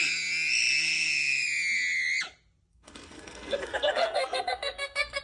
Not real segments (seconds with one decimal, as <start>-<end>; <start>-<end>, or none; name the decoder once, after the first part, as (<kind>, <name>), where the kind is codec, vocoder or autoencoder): 2.7-5.2 (codec, SNAC)